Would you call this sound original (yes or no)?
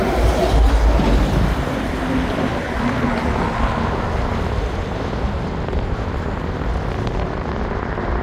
yes